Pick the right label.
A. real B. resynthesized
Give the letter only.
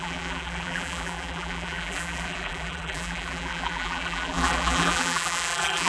B